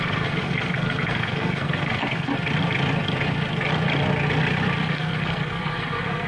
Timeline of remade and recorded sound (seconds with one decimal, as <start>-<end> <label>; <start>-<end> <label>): 0.0-2.3 remade; 2.3-4.9 recorded; 4.9-6.3 remade